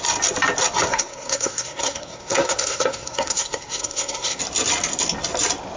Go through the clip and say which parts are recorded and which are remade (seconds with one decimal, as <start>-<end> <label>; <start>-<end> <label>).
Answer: 0.0-0.9 recorded; 0.9-4.4 remade; 4.4-5.8 recorded